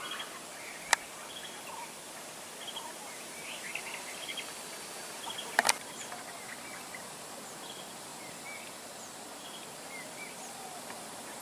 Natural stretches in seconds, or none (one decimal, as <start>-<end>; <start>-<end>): 8.1-10.2